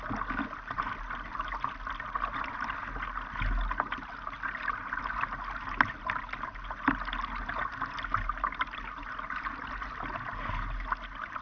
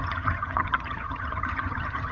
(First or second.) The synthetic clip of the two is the second